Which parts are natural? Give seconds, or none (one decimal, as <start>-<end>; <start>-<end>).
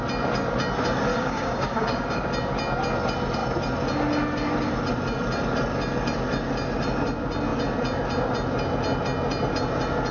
0.0-1.1; 2.2-10.1